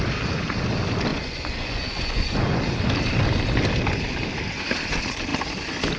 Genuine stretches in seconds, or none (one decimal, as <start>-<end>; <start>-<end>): 0.0-1.1; 2.6-6.0